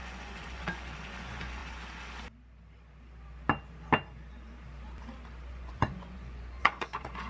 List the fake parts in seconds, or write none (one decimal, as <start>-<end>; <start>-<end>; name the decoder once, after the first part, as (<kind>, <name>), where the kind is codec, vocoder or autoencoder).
0.0-1.6 (vocoder, Vocos); 5.5-7.3

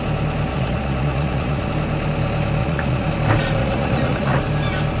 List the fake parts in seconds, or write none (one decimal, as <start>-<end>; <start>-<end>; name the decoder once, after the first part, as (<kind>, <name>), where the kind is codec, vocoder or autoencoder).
0.5-1.7 (vocoder, Vocos); 2.6-3.1; 3.6-4.4

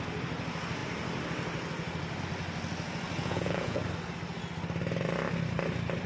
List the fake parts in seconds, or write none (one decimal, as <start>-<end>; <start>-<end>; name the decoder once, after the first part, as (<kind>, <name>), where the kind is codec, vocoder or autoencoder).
3.2-3.8 (vocoder, Vocos)